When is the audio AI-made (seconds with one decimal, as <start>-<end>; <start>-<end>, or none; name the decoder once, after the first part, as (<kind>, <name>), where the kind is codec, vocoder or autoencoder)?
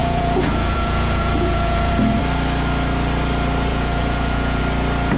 0.0-1.9 (vocoder, Vocos); 3.7-4.6